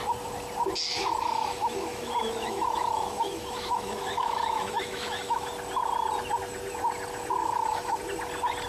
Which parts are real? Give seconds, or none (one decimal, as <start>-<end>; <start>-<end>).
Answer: 0.0-0.9; 5.5-7.4; 8.0-8.7